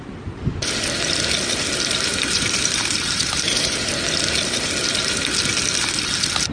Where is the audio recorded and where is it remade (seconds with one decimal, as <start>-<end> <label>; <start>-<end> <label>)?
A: 0.0-2.1 recorded; 2.1-3.9 remade; 3.9-6.5 recorded